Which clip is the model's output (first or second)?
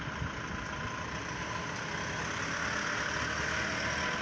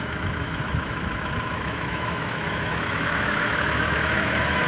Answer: second